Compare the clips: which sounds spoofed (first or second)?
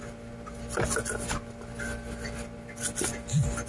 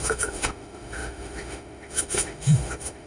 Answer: second